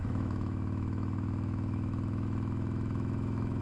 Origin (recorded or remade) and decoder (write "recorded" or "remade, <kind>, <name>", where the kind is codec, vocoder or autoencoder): remade, autoencoder, DAC-VAE